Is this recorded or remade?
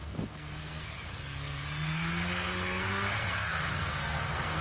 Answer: remade